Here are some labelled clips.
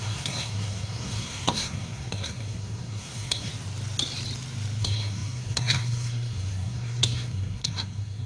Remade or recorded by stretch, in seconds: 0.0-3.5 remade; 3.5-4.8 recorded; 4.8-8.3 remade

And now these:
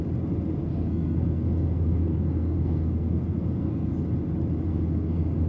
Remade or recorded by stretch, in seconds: 0.0-0.6 recorded; 0.6-3.9 remade; 3.9-4.7 recorded; 4.7-5.5 remade